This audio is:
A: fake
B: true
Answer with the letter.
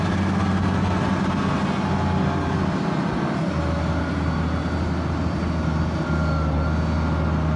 B